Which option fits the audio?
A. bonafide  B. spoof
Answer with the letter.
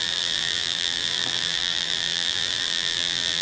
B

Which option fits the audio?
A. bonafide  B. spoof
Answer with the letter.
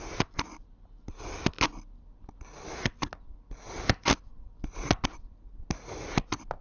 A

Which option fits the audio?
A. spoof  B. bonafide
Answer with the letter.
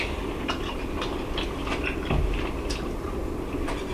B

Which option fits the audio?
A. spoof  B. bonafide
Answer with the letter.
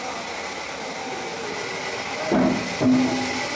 B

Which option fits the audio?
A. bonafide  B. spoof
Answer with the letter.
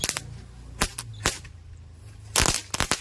A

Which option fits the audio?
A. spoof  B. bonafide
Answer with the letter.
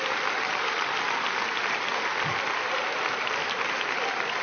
B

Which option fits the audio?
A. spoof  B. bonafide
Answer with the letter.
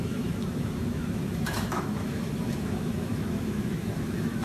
A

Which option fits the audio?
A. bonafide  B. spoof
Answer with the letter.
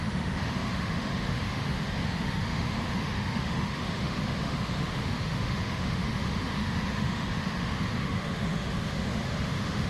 B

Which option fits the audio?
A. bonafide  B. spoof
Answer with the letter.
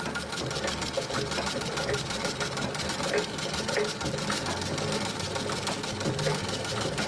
A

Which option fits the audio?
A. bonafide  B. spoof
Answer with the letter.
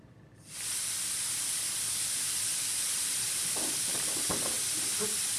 A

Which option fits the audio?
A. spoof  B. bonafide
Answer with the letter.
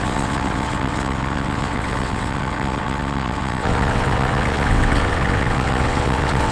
A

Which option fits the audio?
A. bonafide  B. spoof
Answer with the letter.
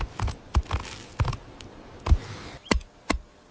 A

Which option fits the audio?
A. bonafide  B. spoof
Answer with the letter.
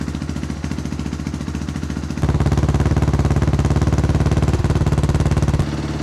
A